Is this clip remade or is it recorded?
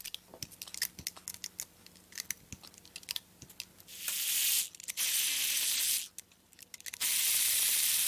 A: recorded